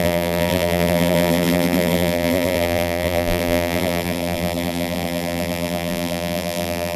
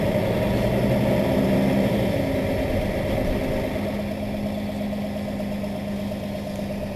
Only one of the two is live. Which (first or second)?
second